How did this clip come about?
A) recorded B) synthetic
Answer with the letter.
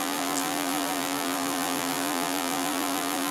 B